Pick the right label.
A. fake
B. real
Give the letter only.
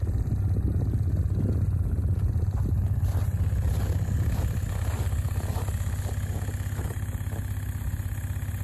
B